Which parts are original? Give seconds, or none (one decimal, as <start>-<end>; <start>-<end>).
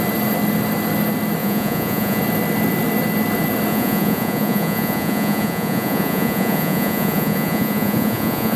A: 0.0-1.4; 2.2-3.7